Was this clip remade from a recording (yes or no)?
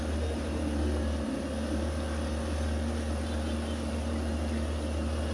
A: no